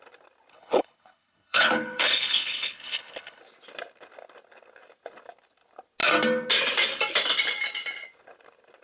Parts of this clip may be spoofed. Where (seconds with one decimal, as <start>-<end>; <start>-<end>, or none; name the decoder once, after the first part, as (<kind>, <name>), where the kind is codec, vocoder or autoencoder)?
0.5-3.4 (codec, HILCodec)